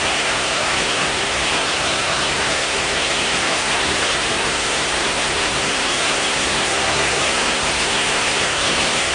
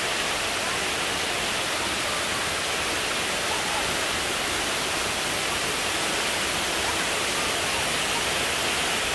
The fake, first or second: first